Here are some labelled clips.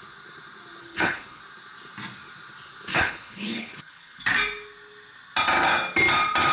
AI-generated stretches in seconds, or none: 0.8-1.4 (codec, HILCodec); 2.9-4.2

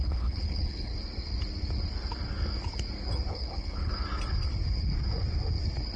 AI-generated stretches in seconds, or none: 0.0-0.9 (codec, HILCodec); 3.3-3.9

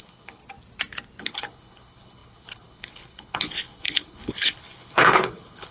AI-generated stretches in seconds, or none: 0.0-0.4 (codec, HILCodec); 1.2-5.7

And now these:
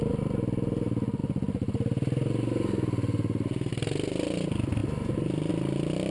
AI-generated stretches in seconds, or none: none